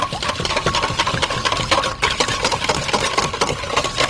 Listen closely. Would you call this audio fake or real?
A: real